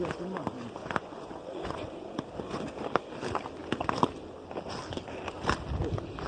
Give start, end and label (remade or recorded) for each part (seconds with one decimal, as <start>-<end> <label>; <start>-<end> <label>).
0.0-0.8 recorded; 0.8-2.1 remade; 2.1-6.3 recorded